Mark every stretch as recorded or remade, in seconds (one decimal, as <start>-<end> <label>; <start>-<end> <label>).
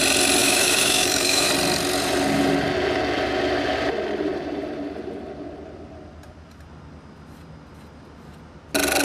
0.0-0.4 recorded; 0.4-1.5 remade; 1.5-9.0 recorded